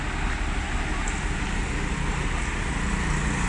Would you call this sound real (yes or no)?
yes